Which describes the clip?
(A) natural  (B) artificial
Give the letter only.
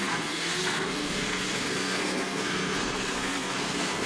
B